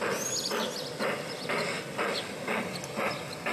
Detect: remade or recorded recorded